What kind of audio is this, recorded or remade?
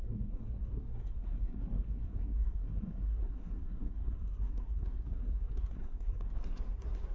remade